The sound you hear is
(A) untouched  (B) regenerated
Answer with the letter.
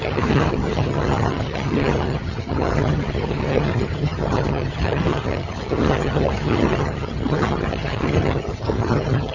B